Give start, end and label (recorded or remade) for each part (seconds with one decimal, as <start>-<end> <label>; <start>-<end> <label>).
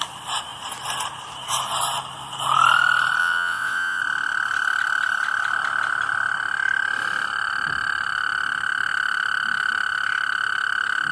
0.0-3.2 recorded; 3.2-4.0 remade; 4.0-11.1 recorded